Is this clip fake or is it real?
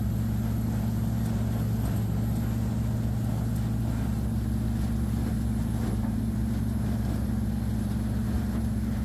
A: real